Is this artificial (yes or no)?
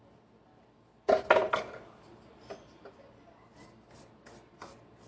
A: no